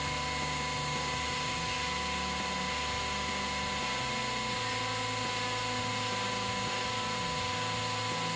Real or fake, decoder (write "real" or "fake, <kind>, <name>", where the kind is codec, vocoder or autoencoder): real